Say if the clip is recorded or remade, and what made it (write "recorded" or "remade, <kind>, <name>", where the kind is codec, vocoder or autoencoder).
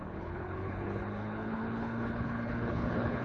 remade, codec, HILCodec